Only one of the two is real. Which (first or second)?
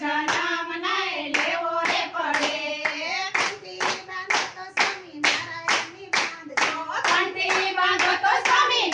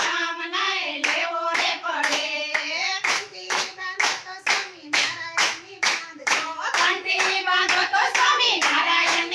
first